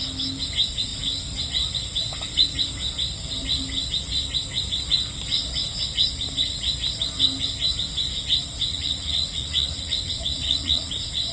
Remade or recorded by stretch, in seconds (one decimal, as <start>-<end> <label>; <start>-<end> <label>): 0.0-8.7 recorded; 8.7-10.9 remade; 10.9-11.3 recorded